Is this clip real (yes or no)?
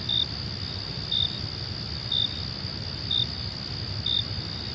yes